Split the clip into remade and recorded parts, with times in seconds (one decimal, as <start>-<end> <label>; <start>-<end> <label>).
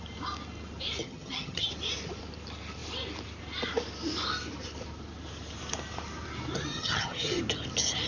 0.0-1.0 recorded; 1.0-1.7 remade; 1.7-6.7 recorded; 6.7-7.4 remade; 7.4-8.1 recorded